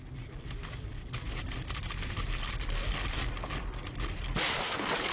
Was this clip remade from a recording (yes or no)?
no